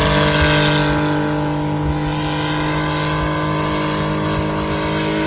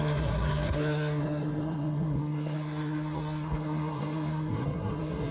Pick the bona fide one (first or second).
first